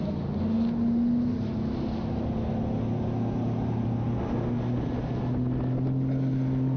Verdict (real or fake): real